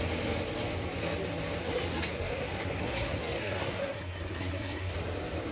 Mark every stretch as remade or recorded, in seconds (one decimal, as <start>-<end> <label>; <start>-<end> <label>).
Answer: 0.0-1.6 recorded; 1.6-4.9 remade; 4.9-5.5 recorded